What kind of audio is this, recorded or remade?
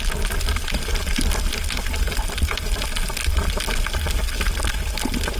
recorded